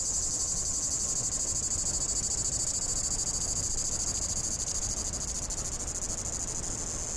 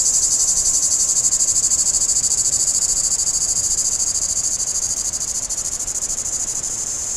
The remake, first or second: second